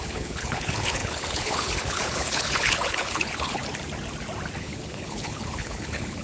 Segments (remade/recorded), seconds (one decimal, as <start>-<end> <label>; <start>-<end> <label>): 0.0-3.6 remade; 3.6-4.6 recorded; 4.6-6.2 remade